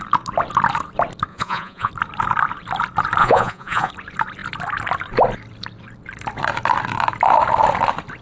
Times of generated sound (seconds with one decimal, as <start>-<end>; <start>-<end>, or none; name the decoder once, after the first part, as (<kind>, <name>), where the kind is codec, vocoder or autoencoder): 1.3-1.9 (vocoder, Vocos); 3.2-3.9